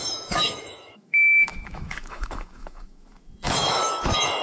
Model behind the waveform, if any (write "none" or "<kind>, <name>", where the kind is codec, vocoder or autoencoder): autoencoder, DAC-VAE